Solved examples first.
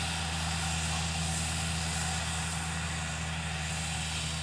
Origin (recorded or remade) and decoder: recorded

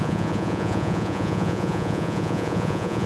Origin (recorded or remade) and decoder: remade, vocoder, Vocos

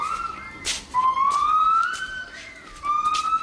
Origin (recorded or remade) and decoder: recorded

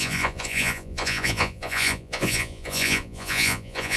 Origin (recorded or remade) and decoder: remade, vocoder, Vocos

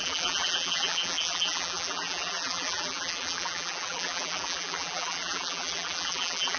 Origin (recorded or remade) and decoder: remade, vocoder, BigVGAN v2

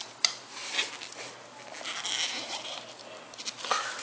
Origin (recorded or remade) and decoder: recorded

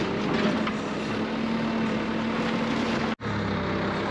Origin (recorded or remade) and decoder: recorded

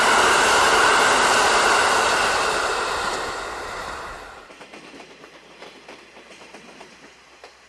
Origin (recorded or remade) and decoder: recorded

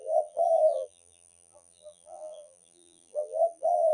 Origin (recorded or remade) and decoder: remade, vocoder, BigVGAN v2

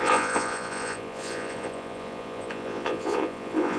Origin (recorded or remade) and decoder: remade, vocoder, Vocos